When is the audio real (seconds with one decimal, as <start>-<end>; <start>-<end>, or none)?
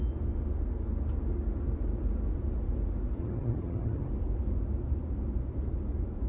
0.0-3.2; 4.1-6.3